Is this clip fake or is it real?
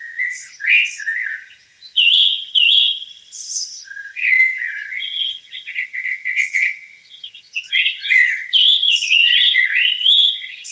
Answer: fake